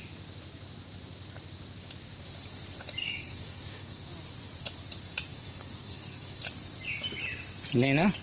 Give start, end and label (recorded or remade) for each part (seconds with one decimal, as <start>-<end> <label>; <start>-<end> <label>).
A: 0.0-3.0 recorded; 3.0-4.1 remade; 4.1-5.3 recorded; 5.3-6.4 remade; 6.4-8.2 recorded